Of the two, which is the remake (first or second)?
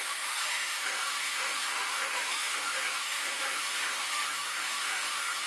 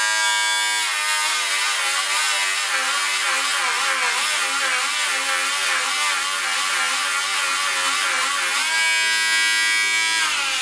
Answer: first